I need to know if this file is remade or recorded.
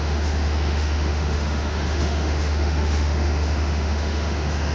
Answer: remade